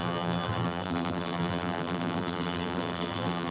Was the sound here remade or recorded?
remade